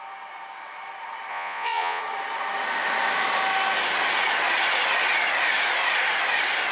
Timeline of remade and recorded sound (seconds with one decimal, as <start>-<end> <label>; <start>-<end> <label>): 0.0-1.3 recorded; 1.3-2.0 remade; 2.0-6.7 recorded